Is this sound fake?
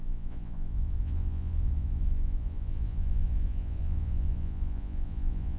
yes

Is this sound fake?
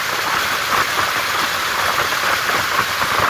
no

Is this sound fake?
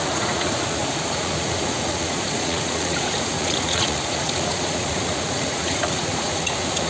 yes